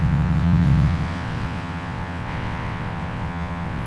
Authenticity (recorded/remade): remade